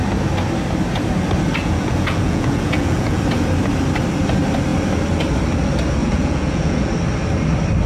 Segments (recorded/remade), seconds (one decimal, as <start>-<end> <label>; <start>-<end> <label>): 0.0-1.6 recorded; 1.6-3.2 remade; 3.2-6.0 recorded; 6.0-6.9 remade; 6.9-7.9 recorded